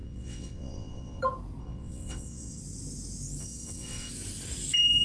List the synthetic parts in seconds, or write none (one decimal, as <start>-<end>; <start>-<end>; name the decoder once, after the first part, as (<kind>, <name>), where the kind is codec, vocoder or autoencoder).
0.0-1.2 (vocoder, WaveNeXt); 1.6-2.6; 3.4-4.1